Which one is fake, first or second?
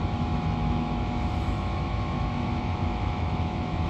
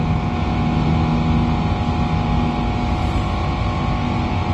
first